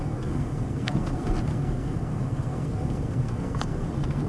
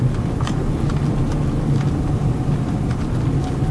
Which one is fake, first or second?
first